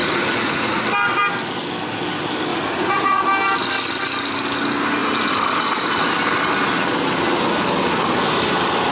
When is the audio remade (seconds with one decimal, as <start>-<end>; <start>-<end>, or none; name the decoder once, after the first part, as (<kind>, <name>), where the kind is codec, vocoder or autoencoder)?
0.0-0.8 (vocoder, Vocos); 2.5-3.2